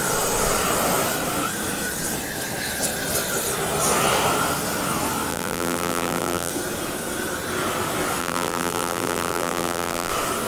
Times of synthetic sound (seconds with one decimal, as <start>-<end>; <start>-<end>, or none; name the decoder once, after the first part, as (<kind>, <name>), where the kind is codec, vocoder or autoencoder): 5.3-6.5 (vocoder, BigVGAN v2); 8.2-10.1